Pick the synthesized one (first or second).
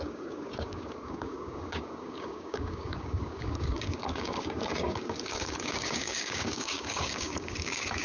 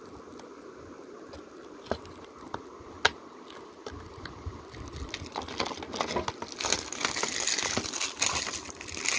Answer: first